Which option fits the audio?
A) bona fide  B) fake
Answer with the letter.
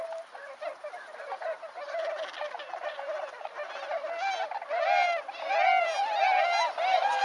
A